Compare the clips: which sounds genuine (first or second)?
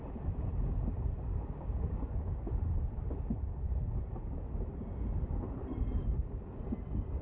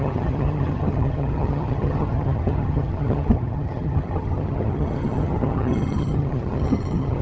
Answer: first